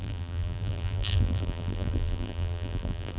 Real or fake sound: fake